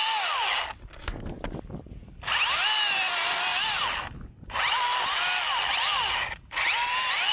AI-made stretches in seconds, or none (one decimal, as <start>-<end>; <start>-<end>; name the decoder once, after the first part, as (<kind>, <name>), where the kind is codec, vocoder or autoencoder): none